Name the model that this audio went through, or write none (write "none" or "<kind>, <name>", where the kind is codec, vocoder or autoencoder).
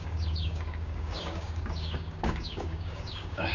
codec, DAC